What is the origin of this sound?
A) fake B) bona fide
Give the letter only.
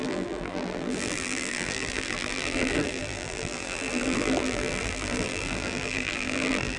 A